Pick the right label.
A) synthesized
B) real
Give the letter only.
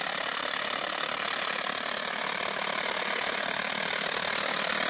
B